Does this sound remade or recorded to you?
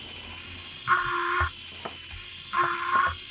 recorded